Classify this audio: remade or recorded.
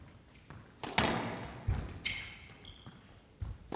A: recorded